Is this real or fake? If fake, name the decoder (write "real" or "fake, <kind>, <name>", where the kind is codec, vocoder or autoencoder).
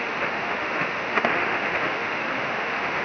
fake, autoencoder, DAC-VAE